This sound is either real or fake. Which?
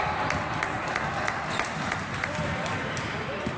real